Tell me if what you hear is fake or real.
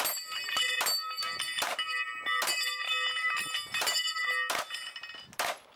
real